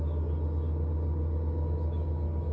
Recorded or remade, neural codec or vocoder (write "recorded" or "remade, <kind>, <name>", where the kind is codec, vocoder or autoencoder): recorded